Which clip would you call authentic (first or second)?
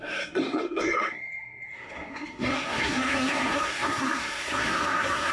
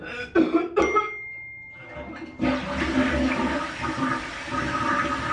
second